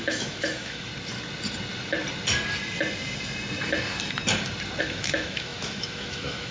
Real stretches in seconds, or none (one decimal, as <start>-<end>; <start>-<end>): 0.9-4.8

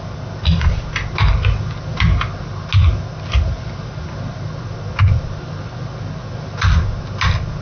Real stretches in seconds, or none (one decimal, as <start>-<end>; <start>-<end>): 0.0-7.6

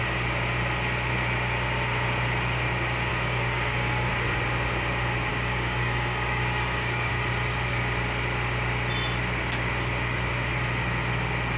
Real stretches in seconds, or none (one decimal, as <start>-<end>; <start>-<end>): 0.0-3.1; 4.1-5.3; 7.1-11.6

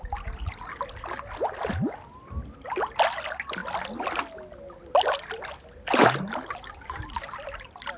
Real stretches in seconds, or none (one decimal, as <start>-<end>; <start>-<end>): 0.0-8.0

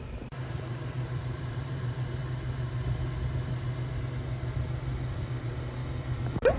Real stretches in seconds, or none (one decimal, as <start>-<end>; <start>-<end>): 2.2-5.3; 5.8-6.6